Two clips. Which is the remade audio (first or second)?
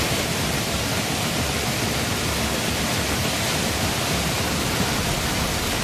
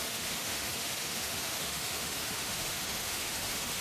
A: second